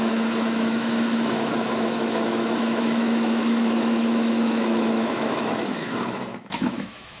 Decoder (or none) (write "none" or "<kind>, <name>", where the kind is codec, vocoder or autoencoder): autoencoder, DAC-VAE